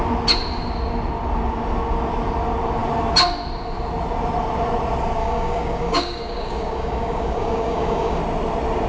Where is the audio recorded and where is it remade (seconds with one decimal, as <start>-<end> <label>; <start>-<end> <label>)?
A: 0.0-5.2 recorded; 5.2-8.2 remade; 8.2-8.9 recorded